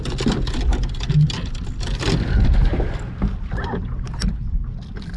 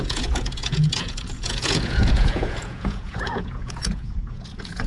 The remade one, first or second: second